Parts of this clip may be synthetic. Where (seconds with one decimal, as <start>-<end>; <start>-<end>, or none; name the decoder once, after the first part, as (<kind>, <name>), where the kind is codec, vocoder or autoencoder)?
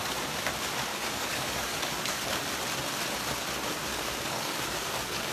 0.9-2.4 (codec, DAC); 3.9-5.3